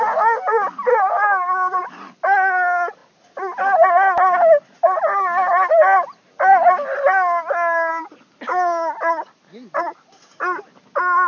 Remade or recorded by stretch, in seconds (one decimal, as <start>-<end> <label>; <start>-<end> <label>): 0.0-11.3 recorded

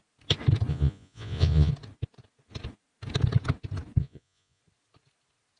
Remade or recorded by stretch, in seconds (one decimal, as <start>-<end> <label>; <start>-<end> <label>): 0.0-0.7 recorded; 0.7-1.7 remade; 1.7-4.0 recorded; 4.0-4.6 remade; 4.6-5.6 recorded

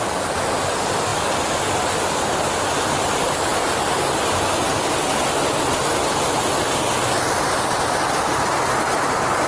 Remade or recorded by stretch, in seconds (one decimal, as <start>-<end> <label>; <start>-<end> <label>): 0.0-9.5 recorded